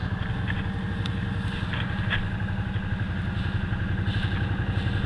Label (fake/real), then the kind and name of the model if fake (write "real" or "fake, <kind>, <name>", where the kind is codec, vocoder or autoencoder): real